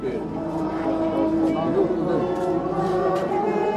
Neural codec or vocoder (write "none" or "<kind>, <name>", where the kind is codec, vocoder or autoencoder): none